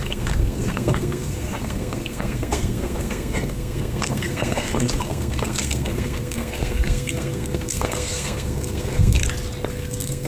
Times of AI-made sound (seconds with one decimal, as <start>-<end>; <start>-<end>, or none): 0.0-9.2; 9.7-10.3